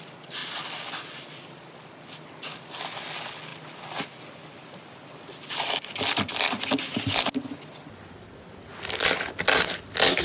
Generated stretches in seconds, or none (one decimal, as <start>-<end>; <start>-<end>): none